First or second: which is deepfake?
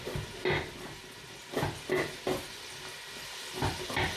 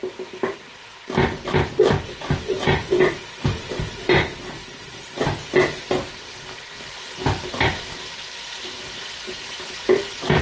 second